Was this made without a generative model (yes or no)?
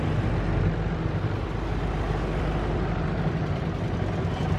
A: yes